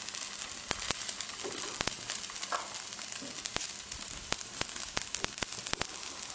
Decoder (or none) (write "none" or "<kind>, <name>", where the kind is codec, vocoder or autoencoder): none